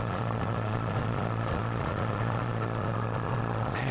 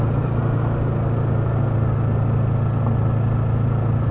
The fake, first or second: first